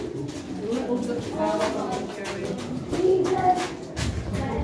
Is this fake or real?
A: real